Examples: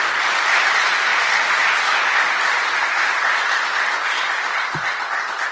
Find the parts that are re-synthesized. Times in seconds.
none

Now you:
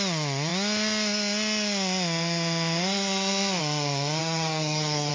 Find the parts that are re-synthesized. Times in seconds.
4.2-5.1 (codec, DAC)

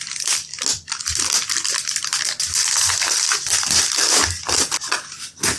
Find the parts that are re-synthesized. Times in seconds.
none